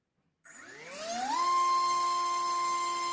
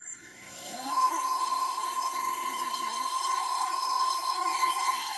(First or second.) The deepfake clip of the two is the second